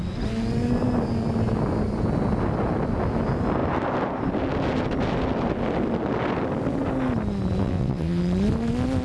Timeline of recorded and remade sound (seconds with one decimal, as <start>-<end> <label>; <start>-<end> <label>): 0.0-7.6 recorded; 7.6-8.2 remade; 8.2-9.0 recorded